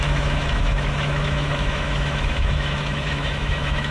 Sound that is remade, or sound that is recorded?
remade